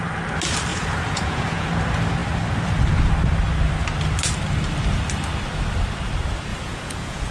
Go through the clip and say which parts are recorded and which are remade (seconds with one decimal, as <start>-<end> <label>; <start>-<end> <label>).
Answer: 0.0-0.7 recorded; 0.7-1.7 remade; 1.7-6.5 recorded; 6.5-7.3 remade

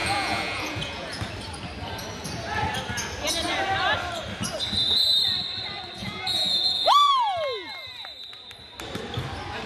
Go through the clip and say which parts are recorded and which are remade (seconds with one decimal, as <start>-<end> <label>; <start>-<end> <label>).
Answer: 0.0-1.3 remade; 1.3-6.0 recorded; 6.0-7.1 remade; 7.1-9.7 recorded

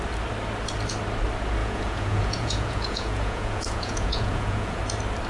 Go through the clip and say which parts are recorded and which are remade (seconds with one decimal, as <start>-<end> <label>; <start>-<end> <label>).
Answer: 0.0-1.6 recorded; 1.6-4.8 remade; 4.8-5.3 recorded

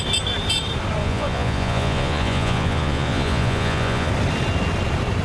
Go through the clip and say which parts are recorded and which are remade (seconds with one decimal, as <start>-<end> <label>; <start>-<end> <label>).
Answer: 0.0-1.0 recorded; 1.0-4.1 remade; 4.1-5.2 recorded

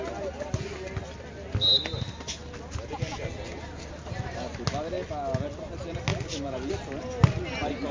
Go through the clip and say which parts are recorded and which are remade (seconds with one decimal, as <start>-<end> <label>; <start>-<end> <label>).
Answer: 0.0-7.9 recorded

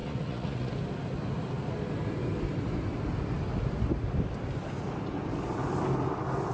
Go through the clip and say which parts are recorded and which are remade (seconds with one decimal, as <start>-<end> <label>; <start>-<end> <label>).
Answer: 0.0-0.7 remade; 0.7-6.5 recorded